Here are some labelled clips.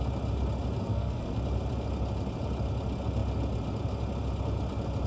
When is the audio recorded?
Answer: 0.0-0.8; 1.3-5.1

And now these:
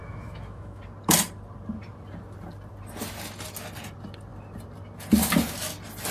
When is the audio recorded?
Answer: 0.8-6.1

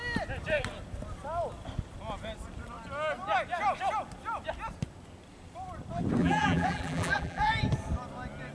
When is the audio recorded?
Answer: 0.0-6.2; 7.5-8.5

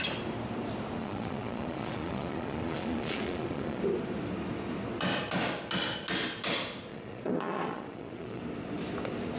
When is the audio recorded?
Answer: 0.0-1.0; 3.8-6.9; 8.4-9.4

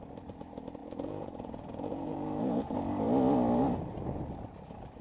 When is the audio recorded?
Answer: 0.0-0.8; 2.7-5.0